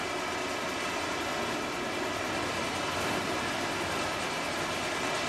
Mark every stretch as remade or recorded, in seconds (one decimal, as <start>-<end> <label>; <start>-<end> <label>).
0.0-5.3 recorded